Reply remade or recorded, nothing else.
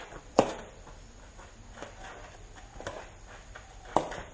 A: recorded